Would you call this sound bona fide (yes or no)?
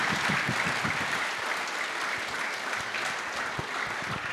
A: yes